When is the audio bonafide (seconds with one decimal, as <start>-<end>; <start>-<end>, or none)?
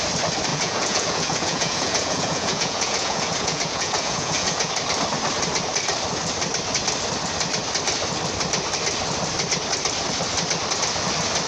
0.0-0.5; 4.7-11.5